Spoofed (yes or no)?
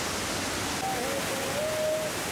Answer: no